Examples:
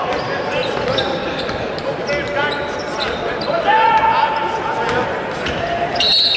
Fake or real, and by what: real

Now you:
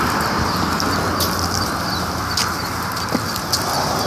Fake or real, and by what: real